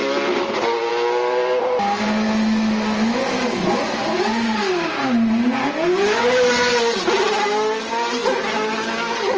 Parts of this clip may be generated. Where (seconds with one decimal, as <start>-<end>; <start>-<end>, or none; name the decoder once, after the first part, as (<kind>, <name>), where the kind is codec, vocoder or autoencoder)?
none